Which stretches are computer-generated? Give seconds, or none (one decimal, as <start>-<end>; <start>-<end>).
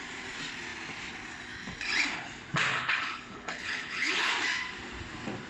2.7-4.3